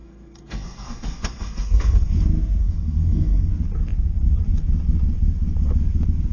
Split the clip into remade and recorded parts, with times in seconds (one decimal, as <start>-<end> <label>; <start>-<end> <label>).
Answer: 0.0-2.1 remade; 2.1-2.6 recorded; 2.6-3.5 remade; 3.5-6.3 recorded